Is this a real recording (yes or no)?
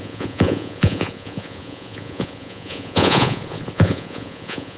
no